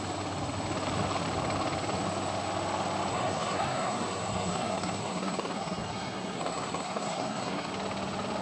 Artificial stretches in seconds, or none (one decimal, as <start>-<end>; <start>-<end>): 3.1-7.7